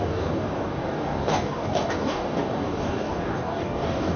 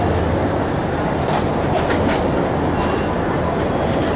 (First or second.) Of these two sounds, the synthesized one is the first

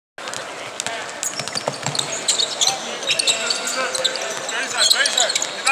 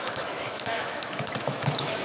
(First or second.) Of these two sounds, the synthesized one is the second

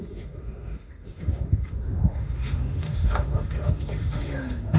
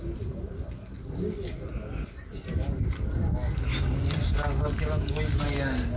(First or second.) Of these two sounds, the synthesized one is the first